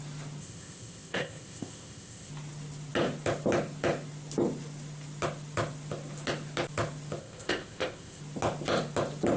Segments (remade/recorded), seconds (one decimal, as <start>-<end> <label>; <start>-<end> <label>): 0.0-0.4 recorded; 0.4-2.3 remade; 2.3-7.2 recorded; 7.2-8.2 remade; 8.2-9.4 recorded